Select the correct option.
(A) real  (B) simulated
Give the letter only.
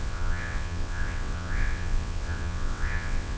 B